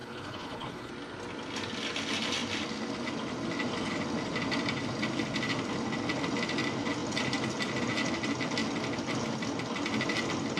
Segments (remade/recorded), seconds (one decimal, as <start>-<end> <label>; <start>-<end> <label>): 0.0-0.9 remade; 0.9-10.6 recorded